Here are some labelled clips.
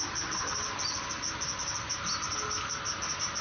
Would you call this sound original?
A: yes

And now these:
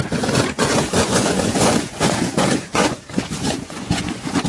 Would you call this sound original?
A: no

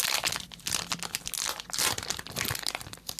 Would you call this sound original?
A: yes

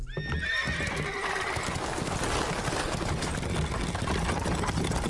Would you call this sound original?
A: yes